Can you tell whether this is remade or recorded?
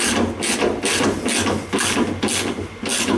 recorded